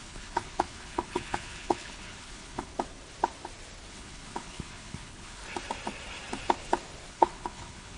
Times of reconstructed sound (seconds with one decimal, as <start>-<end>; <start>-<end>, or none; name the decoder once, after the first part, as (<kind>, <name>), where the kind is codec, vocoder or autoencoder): 0.0-2.7 (codec, HILCodec); 3.9-5.4; 7.1-8.0